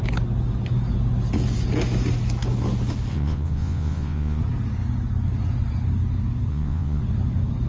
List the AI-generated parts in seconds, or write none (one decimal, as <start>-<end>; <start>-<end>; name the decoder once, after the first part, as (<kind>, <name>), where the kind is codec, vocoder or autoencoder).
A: 3.1-4.4 (vocoder, Vocos); 6.5-7.0